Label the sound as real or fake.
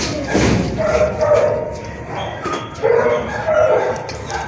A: real